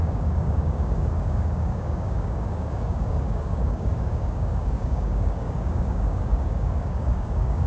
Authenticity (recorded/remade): remade